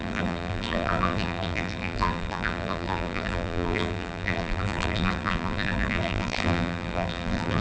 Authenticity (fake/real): fake